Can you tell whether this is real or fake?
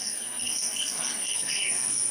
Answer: fake